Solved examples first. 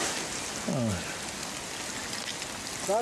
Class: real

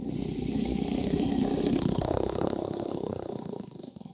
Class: fake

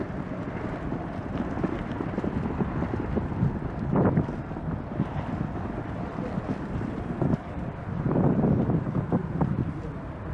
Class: fake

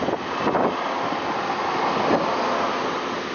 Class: real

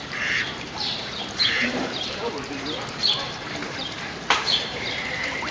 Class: fake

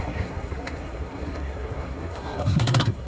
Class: fake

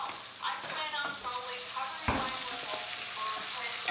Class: real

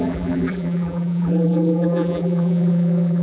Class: fake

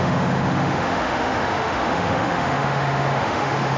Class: fake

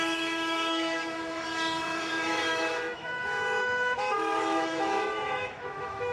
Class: fake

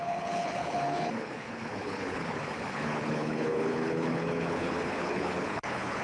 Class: fake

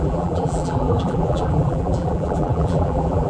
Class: fake